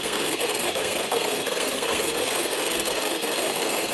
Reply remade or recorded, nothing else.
remade